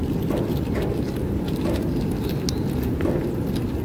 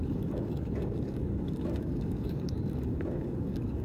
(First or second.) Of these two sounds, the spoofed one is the second